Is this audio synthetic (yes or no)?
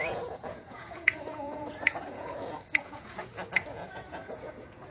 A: yes